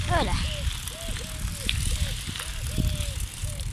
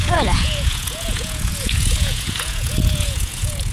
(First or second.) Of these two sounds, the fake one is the second